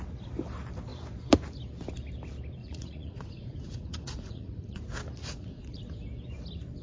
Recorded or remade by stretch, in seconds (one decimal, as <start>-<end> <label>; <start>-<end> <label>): 0.0-2.6 recorded; 2.6-4.8 remade; 4.8-5.2 recorded; 5.2-5.8 remade; 5.8-6.8 recorded